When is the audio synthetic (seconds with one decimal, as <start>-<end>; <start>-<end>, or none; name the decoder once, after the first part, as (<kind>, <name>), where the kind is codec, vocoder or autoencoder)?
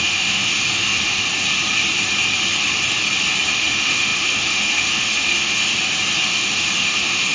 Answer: 0.0-1.3 (autoencoder, DAC-VAE); 3.5-5.7; 6.3-7.3